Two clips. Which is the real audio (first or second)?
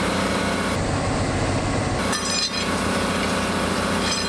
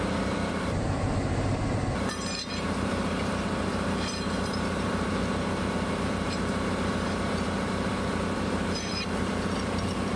first